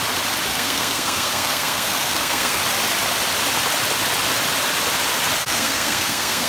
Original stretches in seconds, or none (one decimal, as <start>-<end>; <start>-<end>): 0.0-0.5; 2.6-5.4